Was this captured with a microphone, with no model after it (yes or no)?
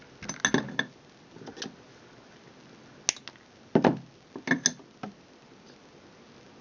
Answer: yes